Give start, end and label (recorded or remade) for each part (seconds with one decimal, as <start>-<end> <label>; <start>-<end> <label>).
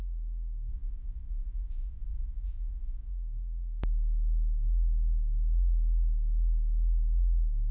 0.0-0.7 recorded; 0.7-3.1 remade; 3.1-7.7 recorded